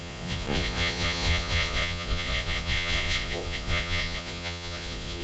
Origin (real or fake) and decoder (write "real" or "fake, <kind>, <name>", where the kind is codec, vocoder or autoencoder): fake, vocoder, Vocos